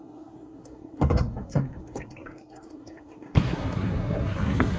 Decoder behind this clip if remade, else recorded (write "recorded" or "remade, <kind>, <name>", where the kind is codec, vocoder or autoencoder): remade, codec, SNAC